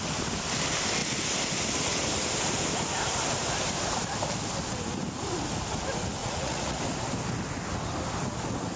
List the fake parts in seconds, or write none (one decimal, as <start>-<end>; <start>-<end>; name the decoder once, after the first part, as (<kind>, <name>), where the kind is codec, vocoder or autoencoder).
6.2-6.8 (vocoder, Vocos)